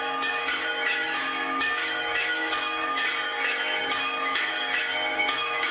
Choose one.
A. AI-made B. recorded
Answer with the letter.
A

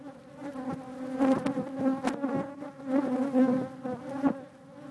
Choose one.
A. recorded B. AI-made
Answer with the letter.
A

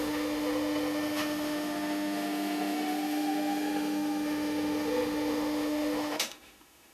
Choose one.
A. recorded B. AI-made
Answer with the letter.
B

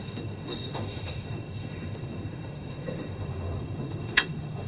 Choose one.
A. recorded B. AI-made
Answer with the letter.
B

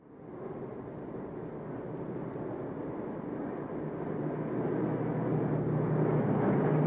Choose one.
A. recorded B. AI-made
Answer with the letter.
A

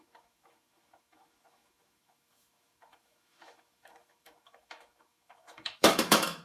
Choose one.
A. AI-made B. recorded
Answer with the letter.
A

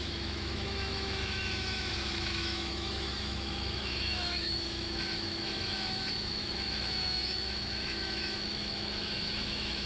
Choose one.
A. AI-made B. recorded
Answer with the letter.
A